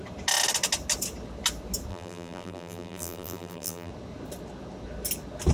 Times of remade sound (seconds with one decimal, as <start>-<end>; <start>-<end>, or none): 1.9-3.9